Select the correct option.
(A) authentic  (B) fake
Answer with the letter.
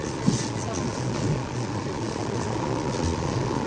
B